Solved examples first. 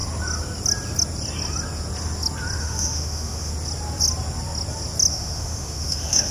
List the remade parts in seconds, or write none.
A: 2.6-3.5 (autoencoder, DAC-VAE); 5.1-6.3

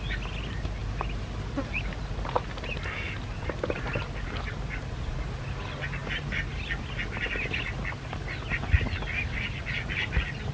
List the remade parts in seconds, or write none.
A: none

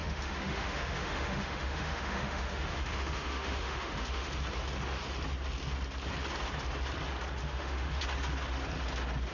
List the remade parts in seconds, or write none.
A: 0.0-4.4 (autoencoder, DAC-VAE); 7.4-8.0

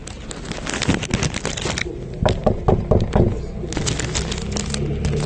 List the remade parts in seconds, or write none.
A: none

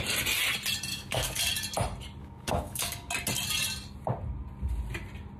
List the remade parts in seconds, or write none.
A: 0.9-1.4 (codec, DAC); 2.2-3.1

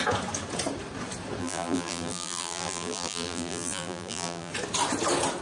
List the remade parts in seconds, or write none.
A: 1.4-4.5 (vocoder, BigVGAN v2)

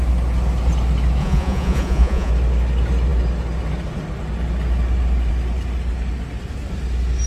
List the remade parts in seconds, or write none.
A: 1.2-2.3 (vocoder, Vocos)